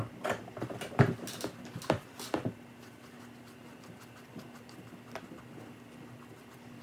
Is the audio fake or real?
real